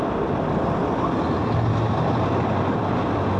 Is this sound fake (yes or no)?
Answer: no